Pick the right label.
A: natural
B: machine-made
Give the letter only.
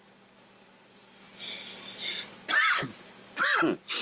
A